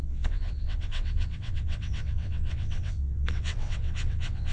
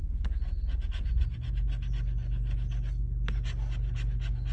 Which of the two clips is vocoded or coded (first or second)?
first